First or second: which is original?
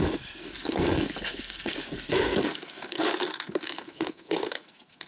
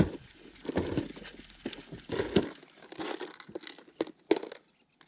second